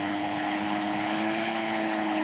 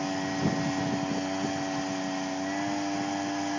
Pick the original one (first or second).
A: second